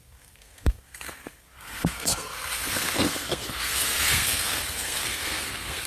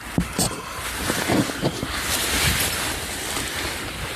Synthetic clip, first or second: first